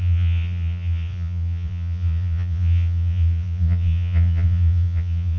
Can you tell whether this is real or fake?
fake